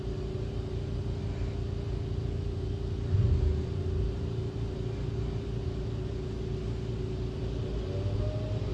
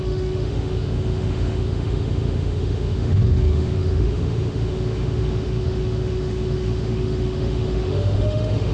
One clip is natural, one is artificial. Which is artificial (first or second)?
second